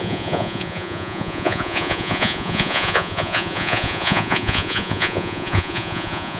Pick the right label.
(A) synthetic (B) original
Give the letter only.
A